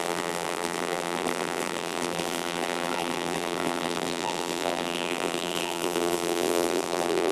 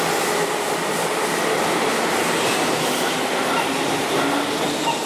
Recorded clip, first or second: second